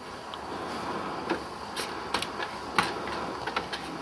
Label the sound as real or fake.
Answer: real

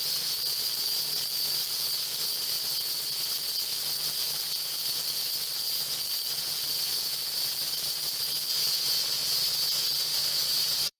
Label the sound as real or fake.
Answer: fake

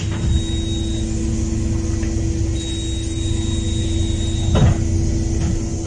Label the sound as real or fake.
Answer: real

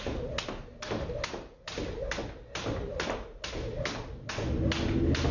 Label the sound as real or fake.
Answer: real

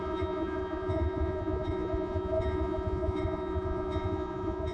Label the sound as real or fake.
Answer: fake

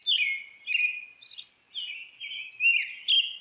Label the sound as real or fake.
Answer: real